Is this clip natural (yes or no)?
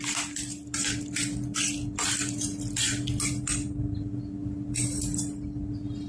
no